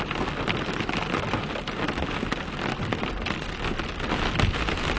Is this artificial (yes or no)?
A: no